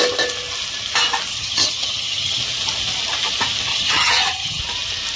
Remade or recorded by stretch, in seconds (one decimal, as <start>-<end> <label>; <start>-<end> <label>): 0.0-1.3 recorded; 1.3-2.4 remade; 2.4-3.7 recorded; 3.7-4.6 remade; 4.6-5.2 recorded